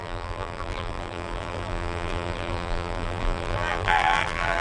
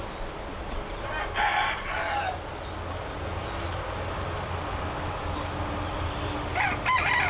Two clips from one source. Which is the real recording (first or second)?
second